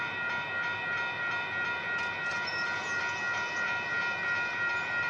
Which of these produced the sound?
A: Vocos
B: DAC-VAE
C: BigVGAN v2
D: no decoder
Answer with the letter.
C